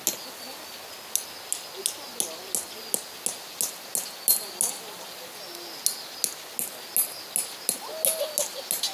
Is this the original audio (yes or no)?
yes